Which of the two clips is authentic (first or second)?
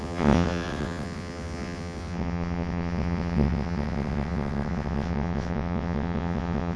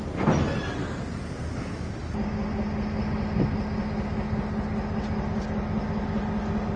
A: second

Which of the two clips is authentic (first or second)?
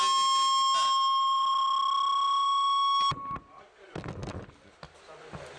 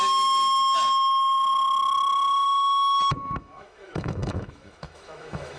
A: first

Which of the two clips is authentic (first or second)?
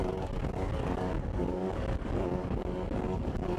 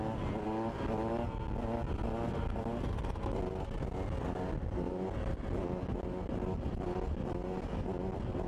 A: second